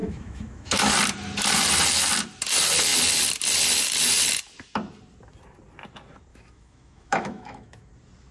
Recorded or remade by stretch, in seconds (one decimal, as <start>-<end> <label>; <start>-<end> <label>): 0.0-0.9 remade; 0.9-6.3 recorded; 6.3-7.9 remade; 7.9-8.3 recorded